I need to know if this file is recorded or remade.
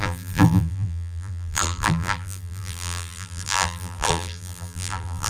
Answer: remade